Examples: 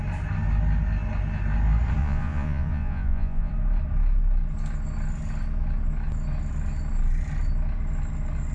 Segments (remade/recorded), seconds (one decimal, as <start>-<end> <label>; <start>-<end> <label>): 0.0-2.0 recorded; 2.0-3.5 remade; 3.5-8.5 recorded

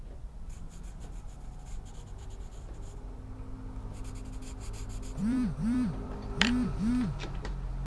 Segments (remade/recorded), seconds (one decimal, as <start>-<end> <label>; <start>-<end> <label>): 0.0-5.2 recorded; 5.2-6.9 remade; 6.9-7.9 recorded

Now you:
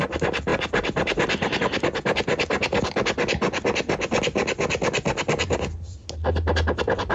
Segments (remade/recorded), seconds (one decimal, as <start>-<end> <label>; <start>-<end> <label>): 0.0-0.5 recorded; 0.5-1.6 remade; 1.6-7.1 recorded